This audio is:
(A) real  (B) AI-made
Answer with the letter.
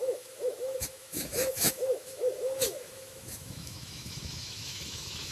B